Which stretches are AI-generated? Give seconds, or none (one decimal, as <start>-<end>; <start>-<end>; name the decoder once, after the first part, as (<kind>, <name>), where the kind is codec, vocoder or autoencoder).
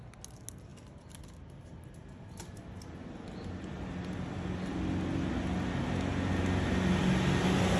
none